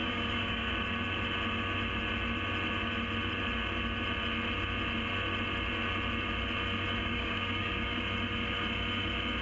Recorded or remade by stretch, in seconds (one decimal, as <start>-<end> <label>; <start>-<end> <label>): 0.0-0.7 remade; 0.7-7.0 recorded; 7.0-8.0 remade; 8.0-9.4 recorded